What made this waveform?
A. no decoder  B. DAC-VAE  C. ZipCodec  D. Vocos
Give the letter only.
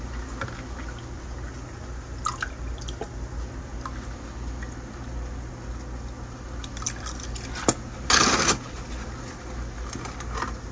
A